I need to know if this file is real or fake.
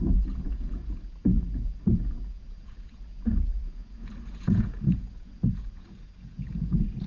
fake